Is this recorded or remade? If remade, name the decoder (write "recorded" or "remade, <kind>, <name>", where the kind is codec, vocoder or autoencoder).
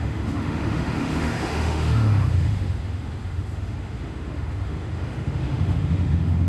remade, autoencoder, DAC-VAE